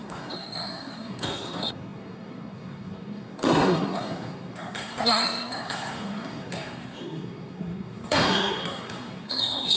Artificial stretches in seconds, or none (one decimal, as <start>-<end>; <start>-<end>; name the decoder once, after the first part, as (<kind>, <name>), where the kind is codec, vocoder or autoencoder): 0.0-9.8 (codec, SNAC)